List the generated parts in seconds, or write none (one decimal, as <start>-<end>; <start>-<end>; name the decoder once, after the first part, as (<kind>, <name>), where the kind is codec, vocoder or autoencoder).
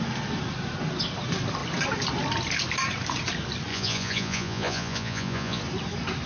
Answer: 3.7-5.6 (vocoder, Vocos)